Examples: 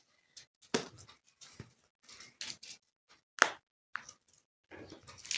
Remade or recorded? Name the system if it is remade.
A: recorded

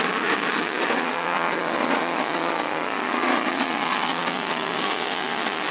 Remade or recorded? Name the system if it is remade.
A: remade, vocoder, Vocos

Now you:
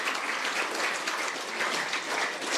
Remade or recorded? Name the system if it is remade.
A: recorded